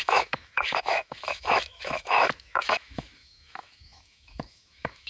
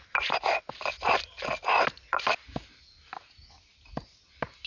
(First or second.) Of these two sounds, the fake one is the first